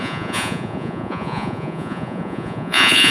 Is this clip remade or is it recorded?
remade